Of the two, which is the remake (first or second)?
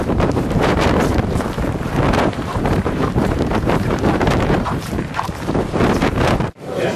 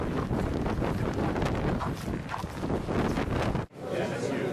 first